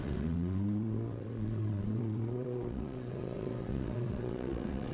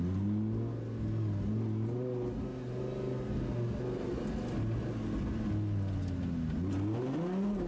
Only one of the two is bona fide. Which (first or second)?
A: second